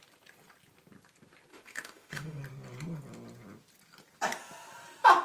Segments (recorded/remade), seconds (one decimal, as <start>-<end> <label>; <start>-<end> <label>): 0.0-1.5 recorded; 1.5-2.4 remade; 2.4-5.2 recorded